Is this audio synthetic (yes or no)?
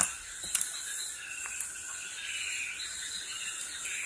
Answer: no